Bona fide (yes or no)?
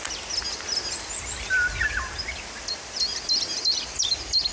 yes